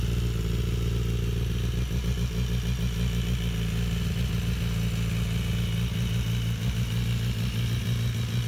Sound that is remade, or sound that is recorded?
recorded